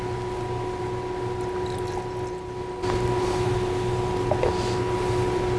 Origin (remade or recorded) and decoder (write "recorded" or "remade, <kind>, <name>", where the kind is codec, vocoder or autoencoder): recorded